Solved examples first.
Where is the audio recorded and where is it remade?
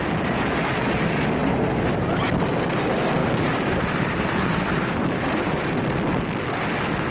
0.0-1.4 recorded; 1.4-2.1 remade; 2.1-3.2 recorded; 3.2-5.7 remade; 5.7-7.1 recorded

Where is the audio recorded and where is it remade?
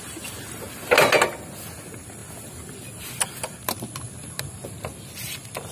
0.0-5.7 recorded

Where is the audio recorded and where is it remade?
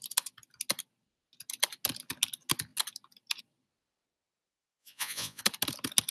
0.0-4.8 recorded; 4.8-5.4 remade; 5.4-6.1 recorded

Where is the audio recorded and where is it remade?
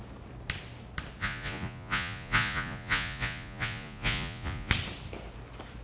0.0-1.2 recorded; 1.2-4.7 remade; 4.7-5.8 recorded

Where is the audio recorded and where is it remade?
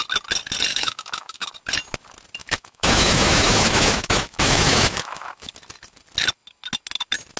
0.0-0.7 recorded; 0.7-1.5 remade; 1.5-2.4 recorded; 2.4-5.5 remade; 5.5-7.4 recorded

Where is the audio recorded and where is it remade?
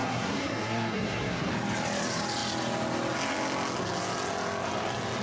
0.0-1.5 remade; 1.5-5.2 recorded